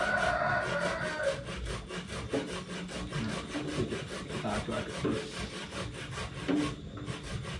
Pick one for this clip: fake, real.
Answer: real